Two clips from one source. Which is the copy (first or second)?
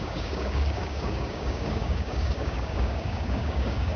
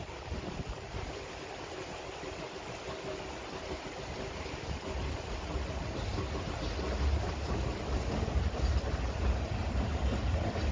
first